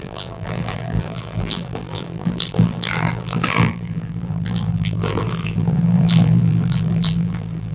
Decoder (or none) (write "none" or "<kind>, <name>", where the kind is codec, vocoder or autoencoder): vocoder, BigVGAN v2